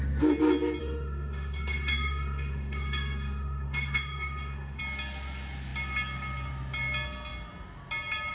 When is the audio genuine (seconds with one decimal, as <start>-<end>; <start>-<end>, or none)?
0.0-0.8; 4.8-8.3